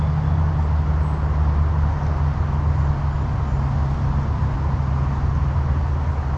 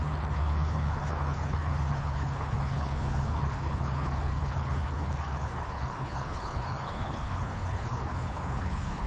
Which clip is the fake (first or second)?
second